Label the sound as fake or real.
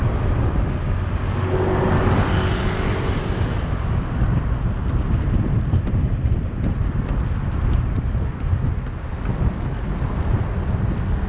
real